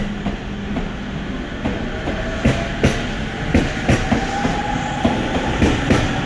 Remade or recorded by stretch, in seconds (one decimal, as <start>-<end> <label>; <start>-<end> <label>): 0.0-6.3 recorded